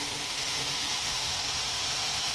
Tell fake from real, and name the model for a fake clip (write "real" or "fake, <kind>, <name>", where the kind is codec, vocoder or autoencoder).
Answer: fake, autoencoder, DAC-VAE